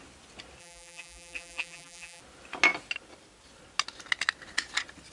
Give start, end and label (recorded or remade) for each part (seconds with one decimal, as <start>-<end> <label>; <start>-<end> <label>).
0.0-0.6 recorded; 0.6-2.2 remade; 2.2-5.1 recorded